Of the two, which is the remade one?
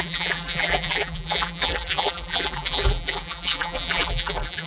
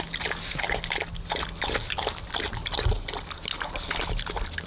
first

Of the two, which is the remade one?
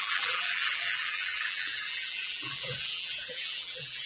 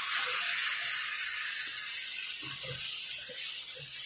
first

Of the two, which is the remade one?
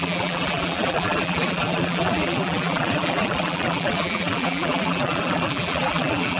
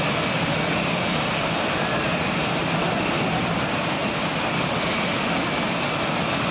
first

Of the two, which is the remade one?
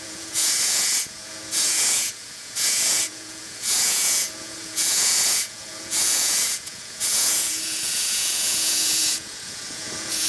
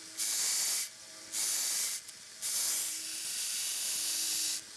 first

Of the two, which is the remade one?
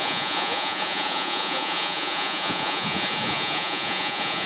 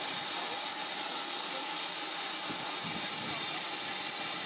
first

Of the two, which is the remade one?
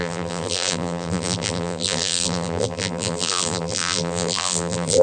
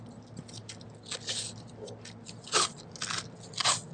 first